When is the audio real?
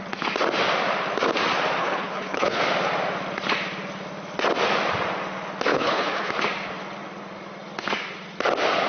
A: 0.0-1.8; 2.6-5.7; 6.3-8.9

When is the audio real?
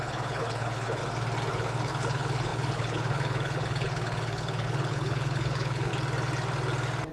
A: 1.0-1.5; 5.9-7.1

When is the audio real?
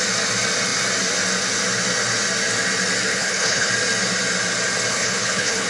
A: 0.0-3.1; 3.7-4.9